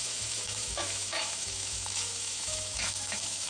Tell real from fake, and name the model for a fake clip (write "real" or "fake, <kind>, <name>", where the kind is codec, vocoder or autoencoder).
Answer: fake, autoencoder, DAC-VAE